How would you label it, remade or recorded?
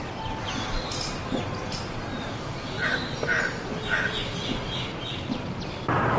recorded